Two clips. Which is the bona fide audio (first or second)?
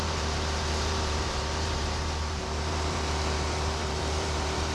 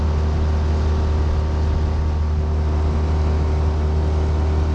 second